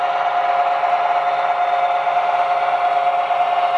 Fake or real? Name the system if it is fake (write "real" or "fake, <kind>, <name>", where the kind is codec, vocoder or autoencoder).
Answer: real